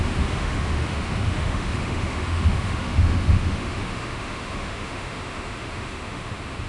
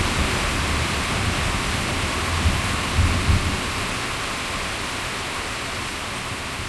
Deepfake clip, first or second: first